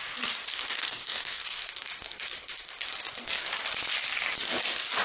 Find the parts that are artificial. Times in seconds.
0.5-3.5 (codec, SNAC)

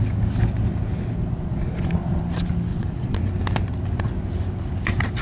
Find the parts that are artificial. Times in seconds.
1.4-2.2 (vocoder, Vocos); 2.7-3.2

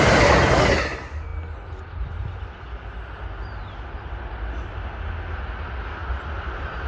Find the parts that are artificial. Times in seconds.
6.0-6.9 (vocoder, BigVGAN v2)

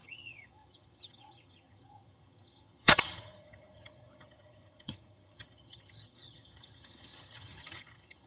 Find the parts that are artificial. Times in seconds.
0.0-8.3 (vocoder, HiFi-GAN)

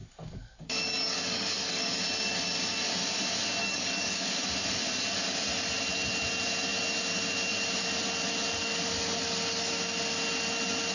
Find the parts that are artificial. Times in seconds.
0.0-2.0 (codec, DAC); 3.6-4.3

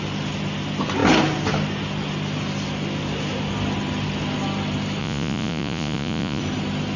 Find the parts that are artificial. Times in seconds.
5.0-6.4 (vocoder, Vocos)

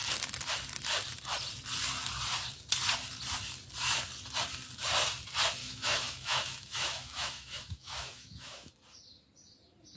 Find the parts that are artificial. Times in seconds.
5.6-8.7 (autoencoder, DAC-VAE)

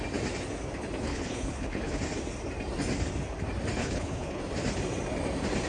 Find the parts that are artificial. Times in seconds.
1.0-2.0 (codec, HILCodec); 3.8-4.4